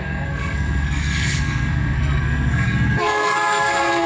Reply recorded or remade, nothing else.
remade